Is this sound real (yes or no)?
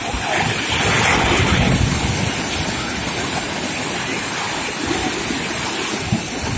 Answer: yes